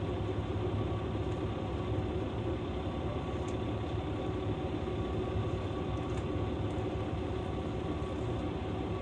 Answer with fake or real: real